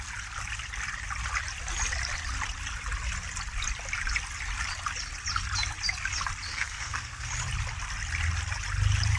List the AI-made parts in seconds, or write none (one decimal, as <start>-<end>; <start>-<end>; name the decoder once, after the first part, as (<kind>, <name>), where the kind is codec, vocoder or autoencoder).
6.5-7.3 (codec, SNAC)